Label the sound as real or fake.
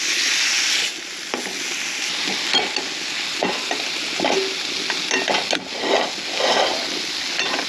real